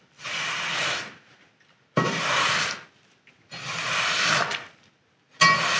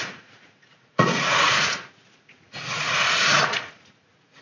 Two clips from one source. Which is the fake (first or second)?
second